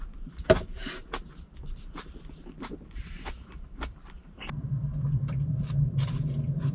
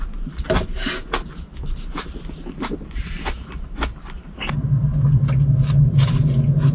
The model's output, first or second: first